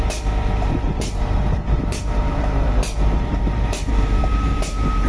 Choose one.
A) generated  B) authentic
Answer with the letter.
A